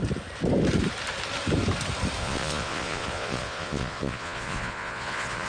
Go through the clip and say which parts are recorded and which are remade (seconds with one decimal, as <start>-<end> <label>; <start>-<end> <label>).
0.0-2.2 recorded; 2.2-5.5 remade